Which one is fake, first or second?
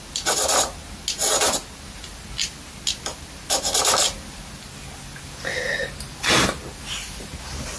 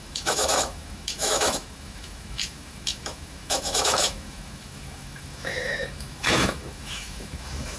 second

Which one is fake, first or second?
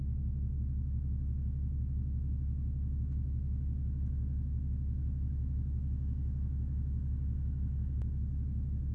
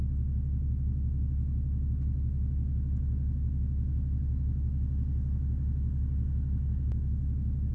first